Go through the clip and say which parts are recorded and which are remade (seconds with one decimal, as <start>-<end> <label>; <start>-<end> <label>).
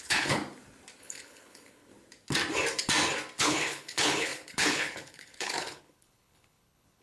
0.0-0.4 remade; 0.4-1.0 recorded; 1.0-1.9 remade; 1.9-3.4 recorded; 3.4-7.0 remade